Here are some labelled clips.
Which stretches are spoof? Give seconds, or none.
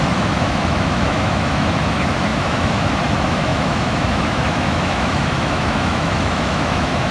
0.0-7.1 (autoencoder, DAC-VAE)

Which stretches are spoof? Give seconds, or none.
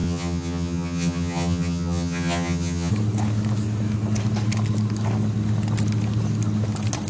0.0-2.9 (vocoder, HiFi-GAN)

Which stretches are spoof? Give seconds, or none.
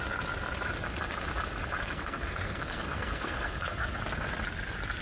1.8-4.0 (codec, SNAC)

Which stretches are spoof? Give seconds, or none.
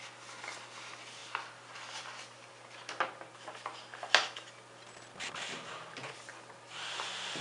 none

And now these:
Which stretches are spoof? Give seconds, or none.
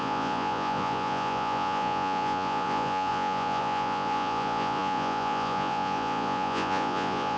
0.0-7.4 (vocoder, Vocos)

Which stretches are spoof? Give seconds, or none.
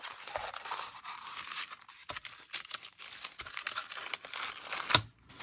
0.0-2.0 (vocoder, BigVGAN v2); 3.4-3.8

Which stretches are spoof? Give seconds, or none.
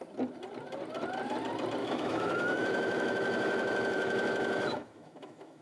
1.8-5.6 (autoencoder, DAC-VAE)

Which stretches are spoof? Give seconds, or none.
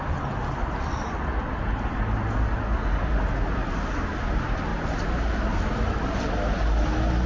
none